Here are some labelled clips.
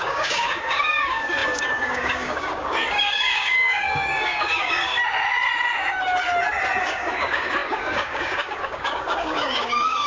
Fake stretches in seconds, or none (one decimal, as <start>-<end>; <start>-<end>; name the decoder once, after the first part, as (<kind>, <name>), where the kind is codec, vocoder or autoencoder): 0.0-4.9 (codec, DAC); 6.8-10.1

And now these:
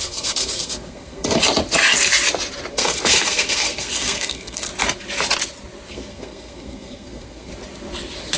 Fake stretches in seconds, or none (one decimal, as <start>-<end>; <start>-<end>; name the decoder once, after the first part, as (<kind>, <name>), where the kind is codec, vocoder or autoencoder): 0.0-1.4 (codec, SNAC); 2.7-4.7; 5.9-7.5

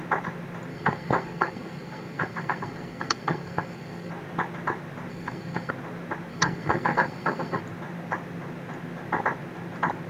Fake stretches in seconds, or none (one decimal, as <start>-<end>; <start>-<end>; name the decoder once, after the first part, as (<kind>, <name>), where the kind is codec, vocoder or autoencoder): 0.7-4.1 (codec, SNAC); 5.1-5.7; 6.3-7.6

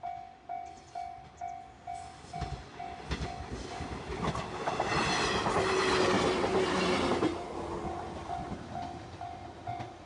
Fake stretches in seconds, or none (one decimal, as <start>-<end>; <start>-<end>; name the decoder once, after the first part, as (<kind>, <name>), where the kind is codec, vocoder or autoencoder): none